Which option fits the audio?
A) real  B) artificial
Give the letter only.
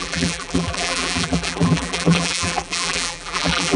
B